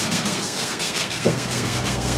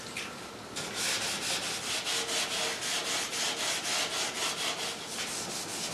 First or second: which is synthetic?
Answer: first